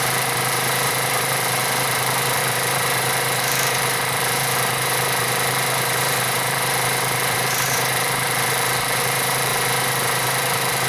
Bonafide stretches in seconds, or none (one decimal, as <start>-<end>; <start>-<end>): 9.5-10.0